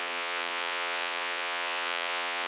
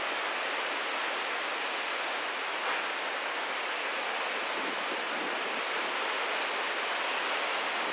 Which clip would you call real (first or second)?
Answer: second